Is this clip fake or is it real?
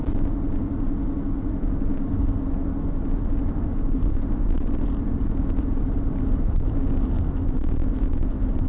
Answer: real